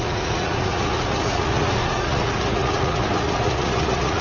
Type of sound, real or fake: fake